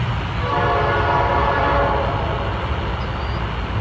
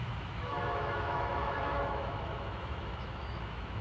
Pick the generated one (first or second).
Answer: second